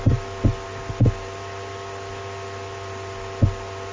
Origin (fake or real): real